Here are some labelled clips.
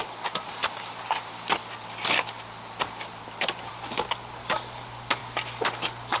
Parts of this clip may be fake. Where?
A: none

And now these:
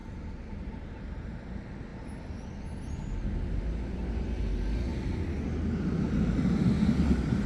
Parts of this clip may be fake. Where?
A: 0.0-1.0 (vocoder, BigVGAN v2)

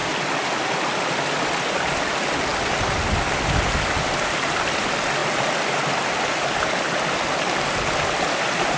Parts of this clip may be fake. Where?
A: none

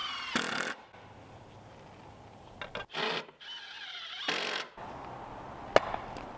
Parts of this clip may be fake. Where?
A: none

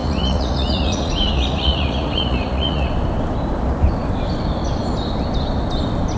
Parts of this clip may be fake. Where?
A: 0.0-2.9 (vocoder, Vocos)